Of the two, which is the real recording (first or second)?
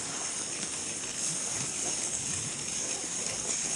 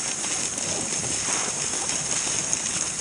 second